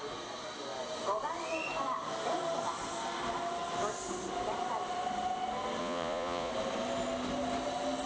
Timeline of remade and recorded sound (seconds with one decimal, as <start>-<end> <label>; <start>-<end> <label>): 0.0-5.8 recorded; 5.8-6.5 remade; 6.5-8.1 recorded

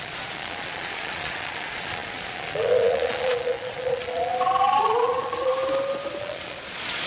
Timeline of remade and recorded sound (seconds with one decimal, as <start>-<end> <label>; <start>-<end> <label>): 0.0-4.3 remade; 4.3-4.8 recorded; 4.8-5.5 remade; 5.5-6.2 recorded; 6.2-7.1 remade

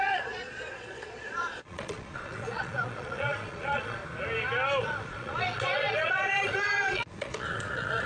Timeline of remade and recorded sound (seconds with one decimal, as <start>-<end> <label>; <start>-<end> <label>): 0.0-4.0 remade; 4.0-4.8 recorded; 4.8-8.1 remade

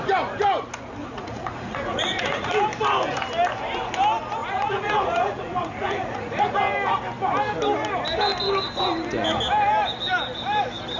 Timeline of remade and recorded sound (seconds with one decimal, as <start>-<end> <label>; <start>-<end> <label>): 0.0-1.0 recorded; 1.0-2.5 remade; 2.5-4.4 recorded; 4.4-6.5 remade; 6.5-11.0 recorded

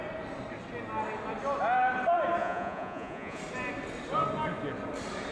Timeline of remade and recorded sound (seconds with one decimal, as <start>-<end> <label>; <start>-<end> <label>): 0.0-2.4 recorded; 2.4-3.4 remade; 3.4-5.3 recorded

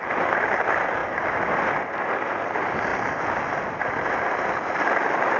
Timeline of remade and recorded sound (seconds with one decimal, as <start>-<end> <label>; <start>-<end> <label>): 0.0-5.4 recorded

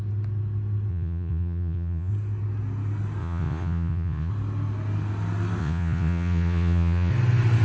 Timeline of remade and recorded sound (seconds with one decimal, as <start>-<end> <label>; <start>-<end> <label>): 0.0-0.9 recorded; 0.9-2.1 remade; 2.1-3.2 recorded; 3.2-4.3 remade; 4.3-5.6 recorded; 5.6-7.1 remade; 7.1-7.6 recorded

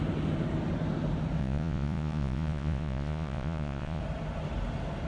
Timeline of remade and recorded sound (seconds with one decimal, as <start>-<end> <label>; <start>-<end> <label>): 0.0-1.4 recorded; 1.4-4.0 remade; 4.0-5.1 recorded